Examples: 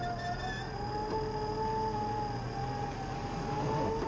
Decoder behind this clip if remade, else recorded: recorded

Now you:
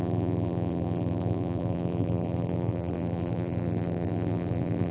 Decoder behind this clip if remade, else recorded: remade, vocoder, BigVGAN v2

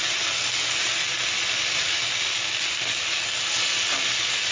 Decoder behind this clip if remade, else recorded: recorded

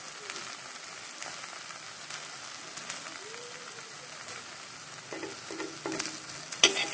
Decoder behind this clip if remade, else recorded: recorded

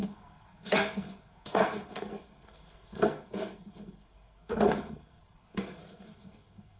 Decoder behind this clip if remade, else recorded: remade, codec, SNAC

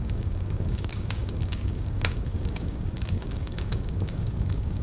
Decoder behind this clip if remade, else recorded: remade, codec, DAC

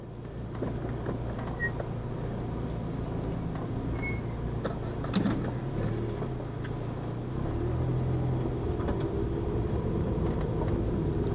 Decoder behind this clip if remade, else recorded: recorded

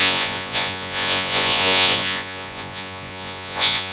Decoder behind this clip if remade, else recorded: remade, vocoder, Vocos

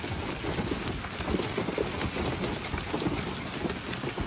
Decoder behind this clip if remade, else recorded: recorded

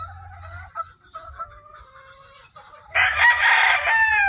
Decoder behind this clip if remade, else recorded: recorded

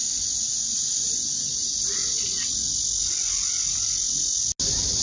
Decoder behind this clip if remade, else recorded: recorded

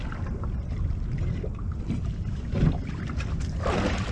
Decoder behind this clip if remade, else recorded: recorded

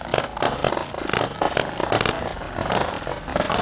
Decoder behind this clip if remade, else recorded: recorded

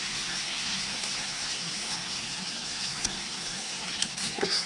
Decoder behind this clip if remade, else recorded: remade, codec, SNAC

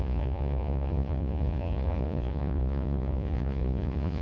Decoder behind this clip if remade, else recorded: remade, vocoder, Vocos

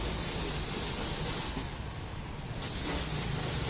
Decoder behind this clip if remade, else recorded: recorded